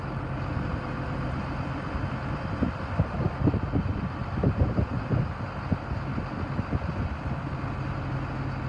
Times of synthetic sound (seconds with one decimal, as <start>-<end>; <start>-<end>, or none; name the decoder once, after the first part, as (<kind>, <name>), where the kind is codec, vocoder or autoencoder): none